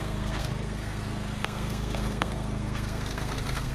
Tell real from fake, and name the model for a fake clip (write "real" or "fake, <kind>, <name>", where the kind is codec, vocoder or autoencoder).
fake, codec, SNAC